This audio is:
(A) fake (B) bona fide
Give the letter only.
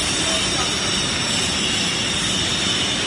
B